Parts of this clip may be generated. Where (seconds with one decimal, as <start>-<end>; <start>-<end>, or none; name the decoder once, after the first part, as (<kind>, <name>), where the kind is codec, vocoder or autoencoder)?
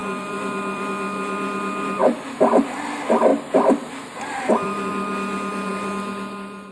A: 0.0-0.9 (vocoder, BigVGAN v2); 3.3-4.9